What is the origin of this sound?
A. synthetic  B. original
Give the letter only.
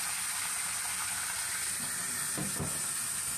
B